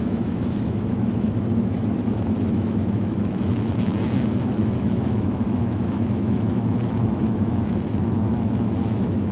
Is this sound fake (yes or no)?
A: yes